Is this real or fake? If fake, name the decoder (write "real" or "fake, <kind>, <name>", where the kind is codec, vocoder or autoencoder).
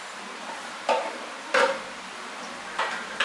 real